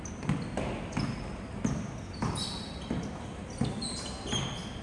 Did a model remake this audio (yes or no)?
no